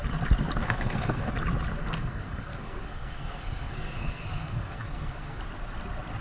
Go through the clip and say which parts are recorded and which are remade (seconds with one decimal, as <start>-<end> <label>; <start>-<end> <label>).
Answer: 0.0-0.6 recorded; 0.6-1.3 remade; 1.3-1.8 recorded; 1.8-5.4 remade; 5.4-6.2 recorded